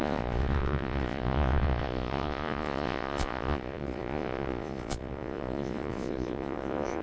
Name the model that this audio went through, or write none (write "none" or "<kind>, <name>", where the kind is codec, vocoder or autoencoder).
vocoder, Vocos